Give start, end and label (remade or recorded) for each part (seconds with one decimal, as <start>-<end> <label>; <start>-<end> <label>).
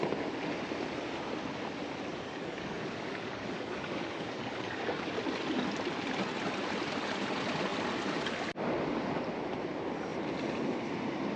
0.0-2.1 recorded; 2.1-5.1 remade; 5.1-11.4 recorded